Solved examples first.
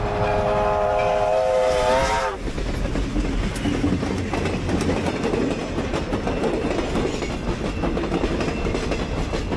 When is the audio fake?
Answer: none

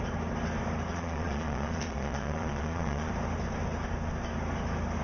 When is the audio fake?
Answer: 0.9-3.1 (vocoder, Vocos)

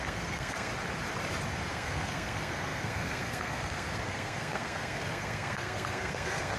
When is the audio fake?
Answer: 0.0-0.7 (codec, SNAC); 1.7-6.6

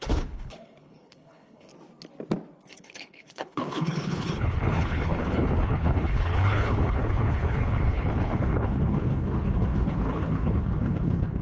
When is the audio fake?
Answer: 0.0-1.7 (codec, HILCodec); 2.7-11.4